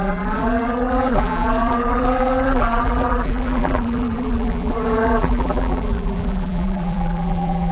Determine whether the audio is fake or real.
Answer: fake